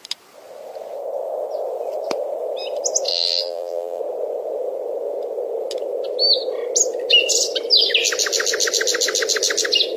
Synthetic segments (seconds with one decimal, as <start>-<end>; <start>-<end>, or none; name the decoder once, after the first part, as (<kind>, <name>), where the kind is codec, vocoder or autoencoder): 3.1-4.0 (vocoder, BigVGAN v2)